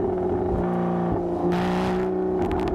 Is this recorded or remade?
recorded